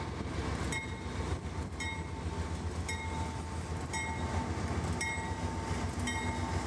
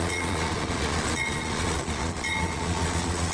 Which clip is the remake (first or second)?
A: second